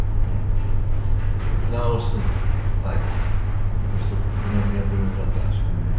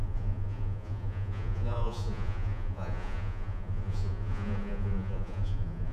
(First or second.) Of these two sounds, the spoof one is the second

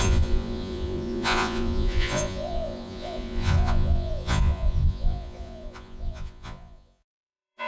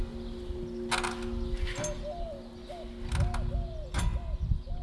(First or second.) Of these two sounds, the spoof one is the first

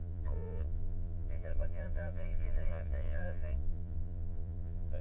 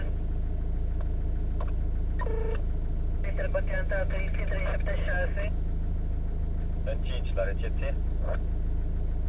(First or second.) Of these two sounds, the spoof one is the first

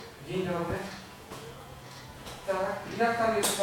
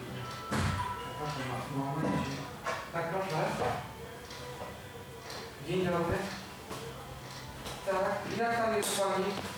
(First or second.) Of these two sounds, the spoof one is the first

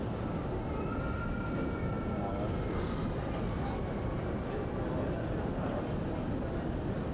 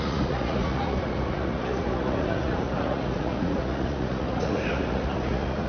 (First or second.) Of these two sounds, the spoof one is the second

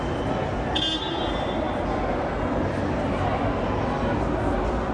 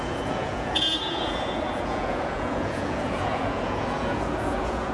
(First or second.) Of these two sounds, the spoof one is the second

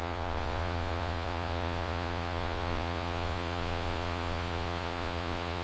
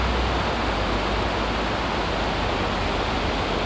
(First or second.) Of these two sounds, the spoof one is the first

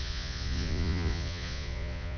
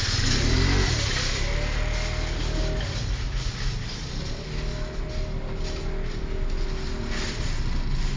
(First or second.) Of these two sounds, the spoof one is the first